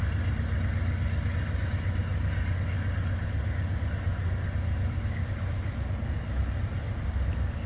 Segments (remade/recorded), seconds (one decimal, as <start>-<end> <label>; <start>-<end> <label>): 0.0-7.7 recorded